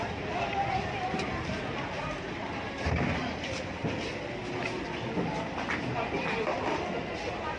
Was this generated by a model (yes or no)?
no